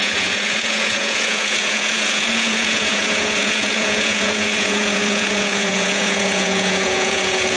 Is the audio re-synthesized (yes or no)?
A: yes